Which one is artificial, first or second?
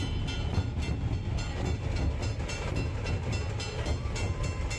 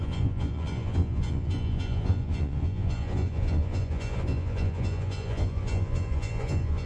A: second